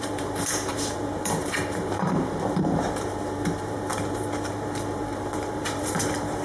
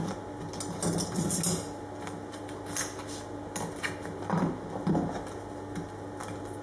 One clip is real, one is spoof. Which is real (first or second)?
second